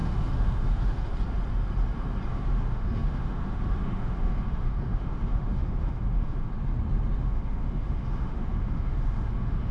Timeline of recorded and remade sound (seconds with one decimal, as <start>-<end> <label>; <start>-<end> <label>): 0.0-1.1 remade; 1.1-2.3 recorded; 2.3-6.5 remade; 6.5-7.2 recorded; 7.2-9.7 remade